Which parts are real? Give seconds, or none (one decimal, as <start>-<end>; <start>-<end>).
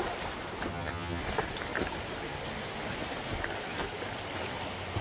0.0-0.7; 1.2-5.0